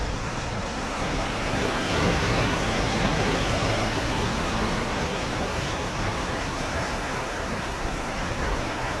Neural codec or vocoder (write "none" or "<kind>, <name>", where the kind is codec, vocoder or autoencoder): codec, SNAC